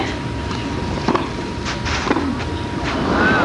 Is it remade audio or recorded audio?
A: recorded